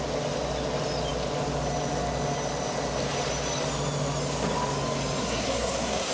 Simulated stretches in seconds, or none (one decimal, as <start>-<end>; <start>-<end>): 5.2-6.1